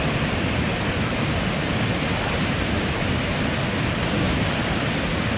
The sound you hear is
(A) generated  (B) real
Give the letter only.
B